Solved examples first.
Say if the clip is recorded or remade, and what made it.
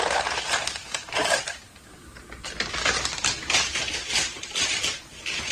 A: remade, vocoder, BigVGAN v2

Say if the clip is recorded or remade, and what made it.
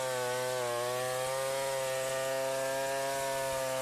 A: recorded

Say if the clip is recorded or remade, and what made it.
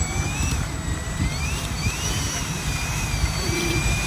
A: remade, vocoder, BigVGAN v2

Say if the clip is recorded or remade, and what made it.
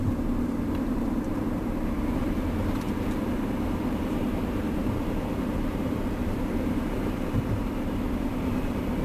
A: remade, vocoder, BigVGAN v2